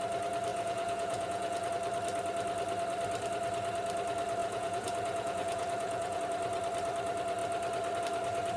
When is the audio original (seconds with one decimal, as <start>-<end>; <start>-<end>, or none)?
0.0-0.5; 1.7-4.4; 6.2-8.6